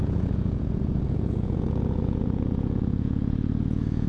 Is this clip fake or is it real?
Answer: fake